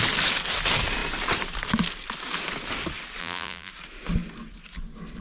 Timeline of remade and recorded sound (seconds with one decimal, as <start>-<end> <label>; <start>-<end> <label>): 0.0-3.2 recorded; 3.2-3.7 remade; 3.7-5.2 recorded

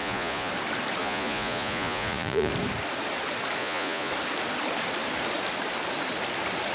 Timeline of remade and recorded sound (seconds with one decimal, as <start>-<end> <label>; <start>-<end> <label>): 0.0-0.5 remade; 0.5-1.0 recorded; 1.0-2.5 remade; 2.5-3.6 recorded; 3.6-4.1 remade; 4.1-6.7 recorded

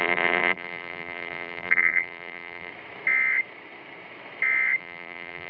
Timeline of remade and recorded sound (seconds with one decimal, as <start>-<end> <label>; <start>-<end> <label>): 0.0-2.7 remade; 2.7-4.8 recorded; 4.8-5.5 remade

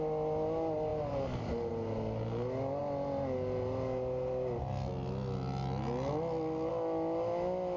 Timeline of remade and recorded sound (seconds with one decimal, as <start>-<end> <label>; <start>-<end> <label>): 0.0-7.8 recorded